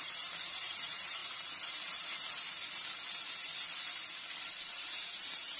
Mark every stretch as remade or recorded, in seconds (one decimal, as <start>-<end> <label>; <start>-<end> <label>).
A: 0.0-1.2 remade; 1.2-4.5 recorded; 4.5-5.6 remade